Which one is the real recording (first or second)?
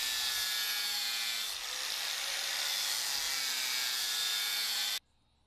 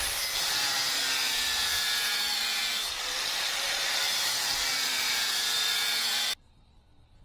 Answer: first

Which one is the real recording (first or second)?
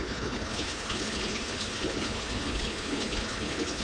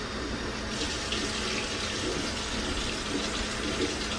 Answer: second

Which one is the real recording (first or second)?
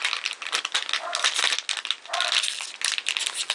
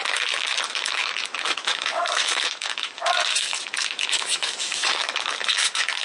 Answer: first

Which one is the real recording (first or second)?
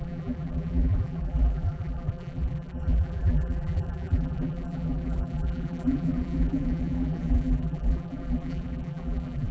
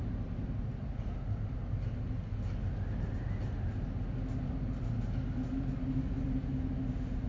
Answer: second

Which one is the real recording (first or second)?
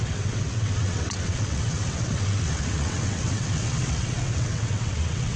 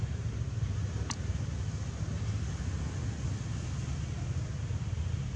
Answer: second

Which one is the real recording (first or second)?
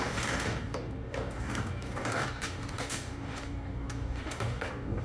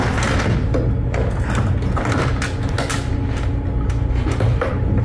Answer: second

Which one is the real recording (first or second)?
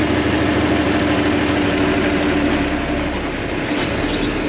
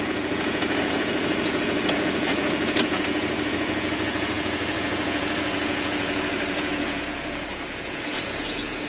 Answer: first